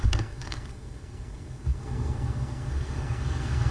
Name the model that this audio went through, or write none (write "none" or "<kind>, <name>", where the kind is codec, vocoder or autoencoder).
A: codec, SNAC